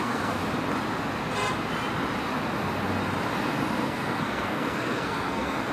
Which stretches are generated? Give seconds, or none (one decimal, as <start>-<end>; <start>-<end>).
0.0-0.4; 3.8-5.7